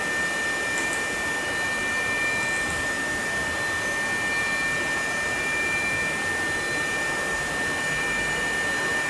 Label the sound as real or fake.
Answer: real